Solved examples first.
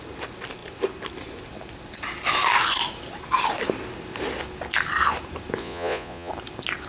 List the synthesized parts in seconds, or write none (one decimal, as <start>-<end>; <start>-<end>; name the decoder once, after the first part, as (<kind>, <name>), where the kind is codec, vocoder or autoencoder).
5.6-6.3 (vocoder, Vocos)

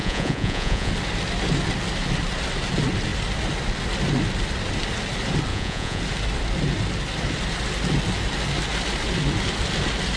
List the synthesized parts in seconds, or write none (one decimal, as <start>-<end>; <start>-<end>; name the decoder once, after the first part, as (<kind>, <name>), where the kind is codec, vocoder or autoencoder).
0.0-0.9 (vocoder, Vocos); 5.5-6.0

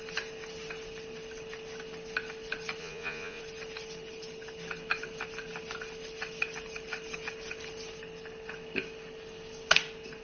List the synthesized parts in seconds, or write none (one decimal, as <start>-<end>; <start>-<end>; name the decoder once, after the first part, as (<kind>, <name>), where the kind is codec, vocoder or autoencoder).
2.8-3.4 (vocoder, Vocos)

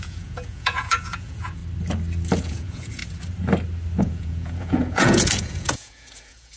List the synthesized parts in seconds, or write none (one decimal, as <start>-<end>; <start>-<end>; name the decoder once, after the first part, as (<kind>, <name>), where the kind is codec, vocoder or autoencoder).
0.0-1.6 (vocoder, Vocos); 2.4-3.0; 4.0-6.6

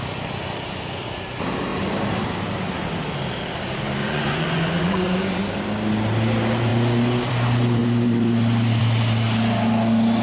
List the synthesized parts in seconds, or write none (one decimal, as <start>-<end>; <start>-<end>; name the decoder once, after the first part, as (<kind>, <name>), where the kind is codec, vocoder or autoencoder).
4.0-5.4 (vocoder, Vocos)